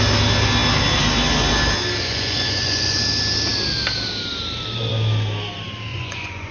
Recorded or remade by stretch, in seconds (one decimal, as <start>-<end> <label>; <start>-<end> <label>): 0.0-2.0 recorded; 2.0-3.0 remade; 3.0-5.9 recorded; 5.9-6.5 remade